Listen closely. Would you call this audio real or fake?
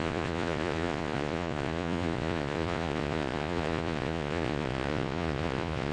fake